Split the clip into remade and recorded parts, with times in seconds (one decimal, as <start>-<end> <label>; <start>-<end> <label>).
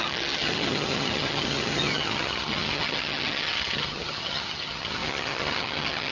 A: 0.0-6.1 remade